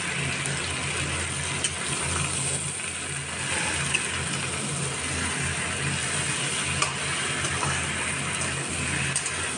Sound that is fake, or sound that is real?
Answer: real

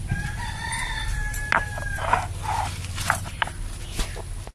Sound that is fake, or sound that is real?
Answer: real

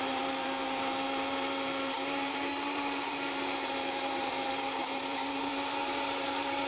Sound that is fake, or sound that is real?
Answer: fake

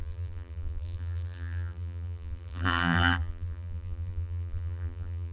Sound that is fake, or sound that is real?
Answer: fake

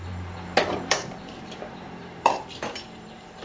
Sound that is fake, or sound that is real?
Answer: fake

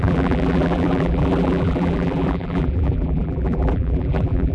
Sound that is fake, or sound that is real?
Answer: fake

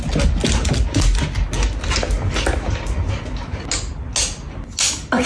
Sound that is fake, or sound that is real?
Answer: real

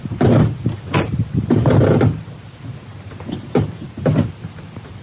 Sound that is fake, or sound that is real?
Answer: real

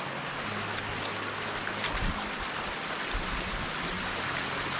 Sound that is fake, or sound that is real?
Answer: real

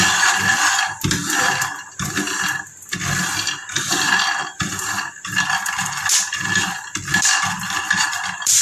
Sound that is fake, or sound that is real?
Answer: fake